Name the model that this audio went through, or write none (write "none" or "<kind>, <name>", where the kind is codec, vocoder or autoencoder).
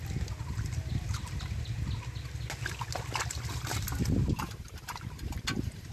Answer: none